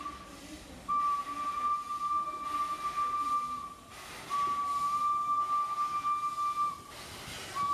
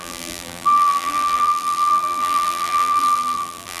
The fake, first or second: second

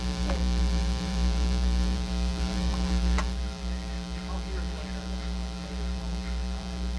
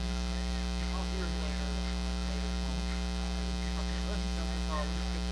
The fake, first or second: first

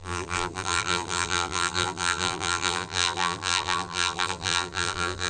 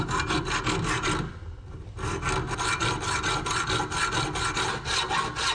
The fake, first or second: first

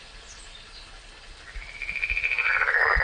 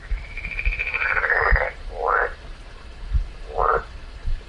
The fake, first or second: second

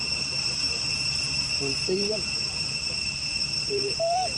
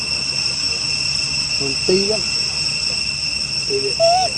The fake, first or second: first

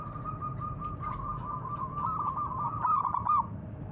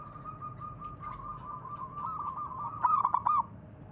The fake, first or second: first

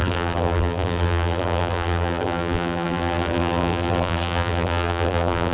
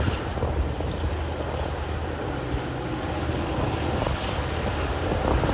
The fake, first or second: first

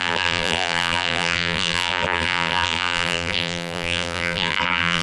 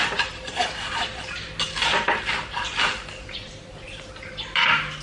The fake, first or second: first